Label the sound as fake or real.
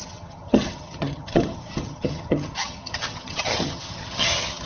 fake